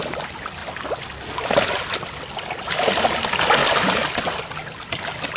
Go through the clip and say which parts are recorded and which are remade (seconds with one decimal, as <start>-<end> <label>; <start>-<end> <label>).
0.0-5.4 recorded